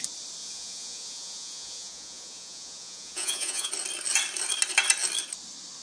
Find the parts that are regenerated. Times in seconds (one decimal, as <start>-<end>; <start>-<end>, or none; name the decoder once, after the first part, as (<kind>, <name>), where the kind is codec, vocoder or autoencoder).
0.4-3.7 (vocoder, Vocos)